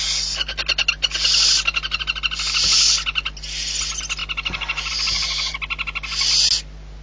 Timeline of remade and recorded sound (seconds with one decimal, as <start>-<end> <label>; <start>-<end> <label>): 0.0-7.0 recorded

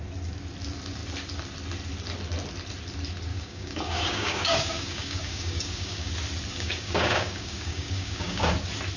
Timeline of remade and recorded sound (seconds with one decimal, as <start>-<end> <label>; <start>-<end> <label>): 0.0-3.3 recorded; 3.3-6.1 remade; 6.1-6.5 recorded; 6.5-8.5 remade; 8.5-9.0 recorded

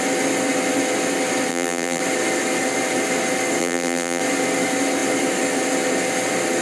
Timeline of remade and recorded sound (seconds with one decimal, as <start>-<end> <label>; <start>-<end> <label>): 0.0-1.5 recorded; 1.5-2.0 remade; 2.0-3.6 recorded; 3.6-4.2 remade; 4.2-6.6 recorded

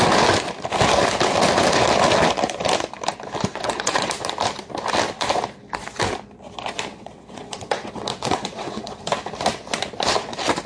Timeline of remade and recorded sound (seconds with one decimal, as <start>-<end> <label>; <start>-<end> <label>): 0.0-3.5 recorded; 3.5-4.1 remade; 4.1-6.9 recorded; 6.9-9.0 remade; 9.0-10.7 recorded

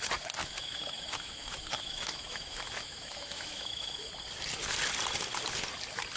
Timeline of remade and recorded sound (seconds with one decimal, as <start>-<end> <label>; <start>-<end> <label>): 0.0-0.4 recorded; 0.4-4.1 remade; 4.1-6.2 recorded